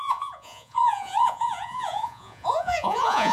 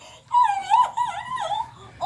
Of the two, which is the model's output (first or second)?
first